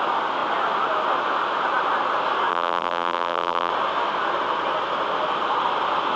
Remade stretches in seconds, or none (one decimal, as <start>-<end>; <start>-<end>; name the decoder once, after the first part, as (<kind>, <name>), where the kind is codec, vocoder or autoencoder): 2.5-3.7 (vocoder, BigVGAN v2)